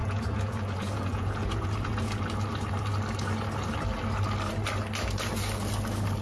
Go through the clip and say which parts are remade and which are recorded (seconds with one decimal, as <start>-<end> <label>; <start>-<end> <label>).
0.0-2.2 remade; 2.2-6.2 recorded